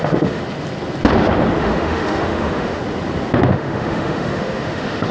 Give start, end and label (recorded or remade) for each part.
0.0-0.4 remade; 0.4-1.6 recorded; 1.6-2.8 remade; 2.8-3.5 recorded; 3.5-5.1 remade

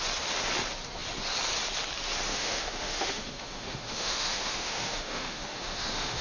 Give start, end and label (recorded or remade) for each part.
0.0-2.3 recorded; 2.3-6.2 remade

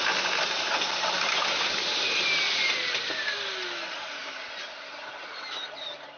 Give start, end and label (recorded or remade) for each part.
0.0-6.2 recorded

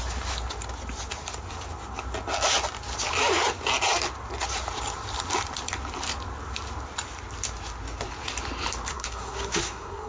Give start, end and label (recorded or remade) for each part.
0.0-8.9 recorded; 8.9-10.1 remade

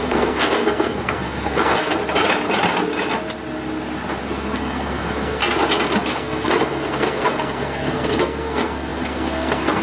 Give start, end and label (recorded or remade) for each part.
0.0-2.0 remade; 2.0-4.2 recorded; 4.2-5.4 remade; 5.4-6.1 recorded; 6.1-9.8 remade

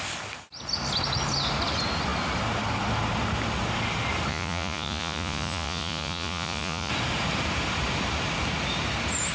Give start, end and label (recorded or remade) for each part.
0.0-4.3 recorded; 4.3-6.9 remade; 6.9-9.3 recorded

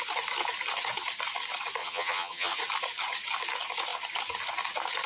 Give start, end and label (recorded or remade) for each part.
0.0-1.8 recorded; 1.8-2.6 remade; 2.6-5.1 recorded

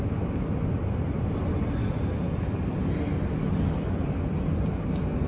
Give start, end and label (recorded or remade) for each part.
0.0-5.3 recorded